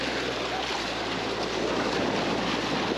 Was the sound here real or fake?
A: real